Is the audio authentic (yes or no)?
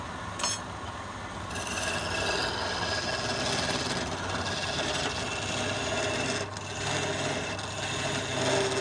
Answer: yes